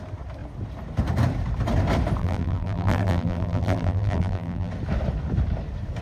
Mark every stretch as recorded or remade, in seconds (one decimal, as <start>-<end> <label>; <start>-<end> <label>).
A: 0.0-2.2 recorded; 2.2-4.7 remade; 4.7-6.0 recorded